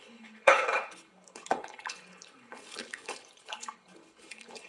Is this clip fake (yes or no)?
yes